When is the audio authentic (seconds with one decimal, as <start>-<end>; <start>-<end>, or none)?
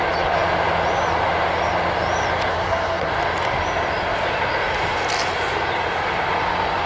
0.0-2.5; 3.1-6.9